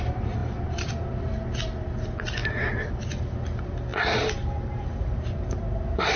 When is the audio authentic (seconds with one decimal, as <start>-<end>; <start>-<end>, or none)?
0.0-6.2